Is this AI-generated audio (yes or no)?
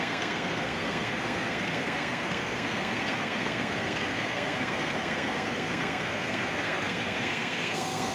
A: yes